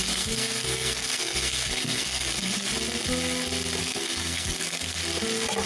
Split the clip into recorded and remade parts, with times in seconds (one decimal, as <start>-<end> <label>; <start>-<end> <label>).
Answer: 0.0-2.7 remade; 2.7-3.8 recorded; 3.8-5.0 remade; 5.0-5.7 recorded